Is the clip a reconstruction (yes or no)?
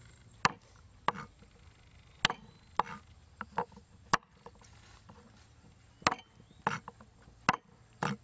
no